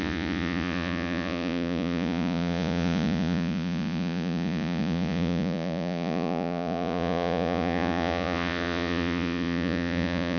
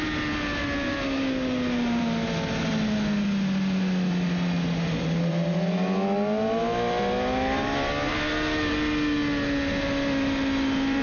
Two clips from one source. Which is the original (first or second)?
second